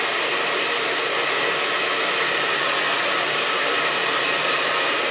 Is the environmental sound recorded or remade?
recorded